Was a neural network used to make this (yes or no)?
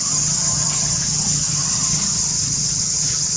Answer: yes